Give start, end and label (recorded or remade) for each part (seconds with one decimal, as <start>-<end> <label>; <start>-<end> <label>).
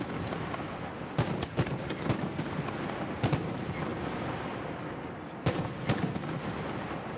0.0-7.2 recorded